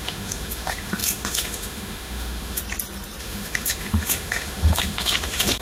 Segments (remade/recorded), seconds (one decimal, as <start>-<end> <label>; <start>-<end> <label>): 0.0-2.6 remade; 2.6-3.2 recorded; 3.2-5.6 remade